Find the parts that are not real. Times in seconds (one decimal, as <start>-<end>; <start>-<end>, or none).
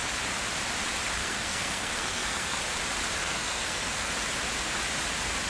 1.2-2.6; 3.2-4.1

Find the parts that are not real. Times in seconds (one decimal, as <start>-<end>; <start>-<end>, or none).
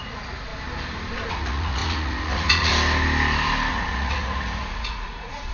0.0-0.5; 1.3-2.7; 3.7-5.5